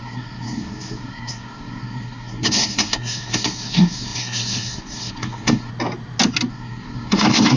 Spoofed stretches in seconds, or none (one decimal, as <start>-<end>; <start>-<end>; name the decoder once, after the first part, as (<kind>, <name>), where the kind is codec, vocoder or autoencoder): 0.0-5.7 (codec, SNAC); 6.5-7.6